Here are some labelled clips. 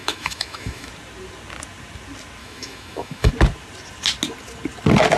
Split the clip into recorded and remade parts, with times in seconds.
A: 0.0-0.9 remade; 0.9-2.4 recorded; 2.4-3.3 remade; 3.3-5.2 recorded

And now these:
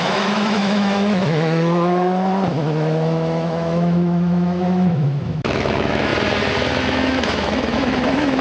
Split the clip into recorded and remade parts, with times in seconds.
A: 0.0-6.1 remade; 6.1-6.8 recorded; 6.8-8.4 remade

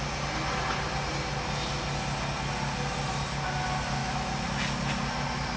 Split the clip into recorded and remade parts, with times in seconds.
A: 0.0-4.0 recorded; 4.0-4.6 remade; 4.6-5.6 recorded

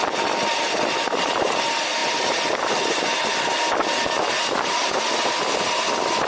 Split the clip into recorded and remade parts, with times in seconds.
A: 0.0-6.3 recorded